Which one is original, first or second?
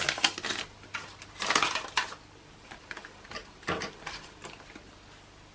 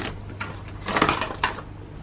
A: second